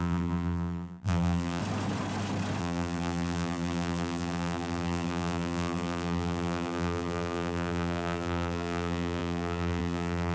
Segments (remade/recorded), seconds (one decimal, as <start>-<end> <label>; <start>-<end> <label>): 0.0-1.6 remade; 1.6-2.6 recorded; 2.6-10.3 remade